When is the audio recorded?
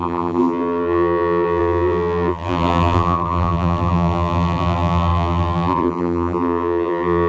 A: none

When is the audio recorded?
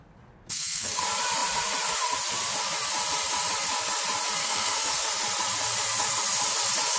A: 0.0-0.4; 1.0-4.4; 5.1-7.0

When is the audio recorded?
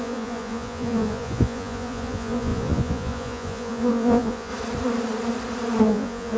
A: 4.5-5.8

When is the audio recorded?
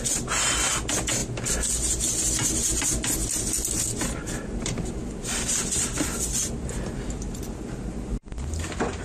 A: 0.0-9.0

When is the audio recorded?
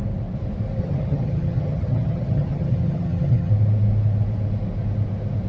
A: 0.0-0.8; 3.5-5.5